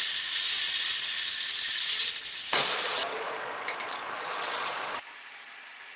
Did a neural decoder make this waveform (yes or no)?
yes